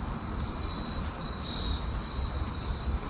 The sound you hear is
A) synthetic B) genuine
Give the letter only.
B